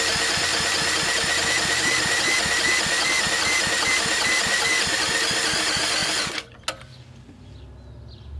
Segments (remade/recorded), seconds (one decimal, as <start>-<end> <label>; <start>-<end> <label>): 0.0-6.0 recorded; 6.0-6.6 remade; 6.6-8.4 recorded